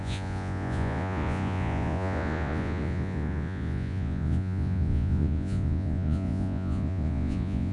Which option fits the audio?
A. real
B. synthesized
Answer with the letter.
B